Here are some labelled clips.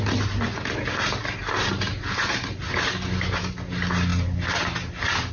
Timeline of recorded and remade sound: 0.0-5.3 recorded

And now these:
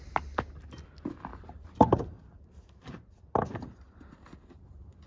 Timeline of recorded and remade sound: 0.0-1.3 recorded; 1.3-4.0 remade; 4.0-5.1 recorded

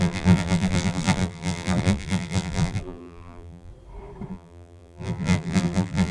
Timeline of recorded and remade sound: 0.0-3.7 remade; 3.7-4.3 recorded; 4.3-6.1 remade